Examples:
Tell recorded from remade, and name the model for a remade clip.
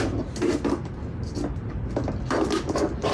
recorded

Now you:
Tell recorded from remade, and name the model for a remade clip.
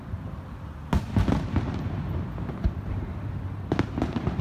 recorded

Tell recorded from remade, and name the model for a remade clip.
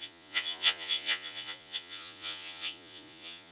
remade, vocoder, Vocos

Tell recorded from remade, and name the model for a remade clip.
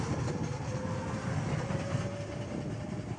recorded